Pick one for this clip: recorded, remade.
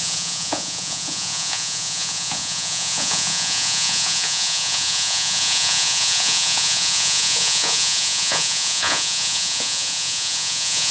remade